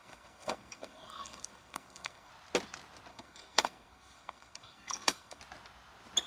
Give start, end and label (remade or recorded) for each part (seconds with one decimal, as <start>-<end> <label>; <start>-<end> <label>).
0.0-2.3 remade; 2.3-3.1 recorded; 3.1-5.4 remade; 5.4-6.3 recorded